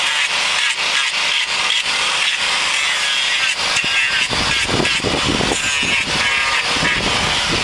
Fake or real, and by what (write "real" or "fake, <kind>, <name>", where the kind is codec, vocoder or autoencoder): real